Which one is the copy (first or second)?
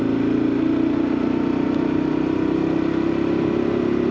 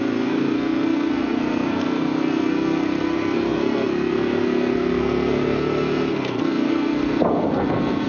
second